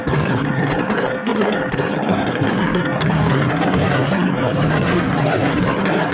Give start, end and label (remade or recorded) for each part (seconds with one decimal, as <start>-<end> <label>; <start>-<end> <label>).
0.0-6.1 remade